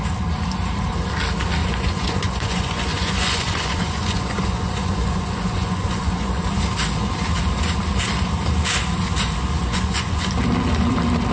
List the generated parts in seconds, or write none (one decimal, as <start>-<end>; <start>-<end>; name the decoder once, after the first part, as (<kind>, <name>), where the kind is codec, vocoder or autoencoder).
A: 1.6-6.4 (vocoder, Vocos); 9.6-10.3